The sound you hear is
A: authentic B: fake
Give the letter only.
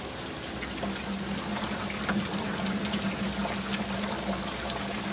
A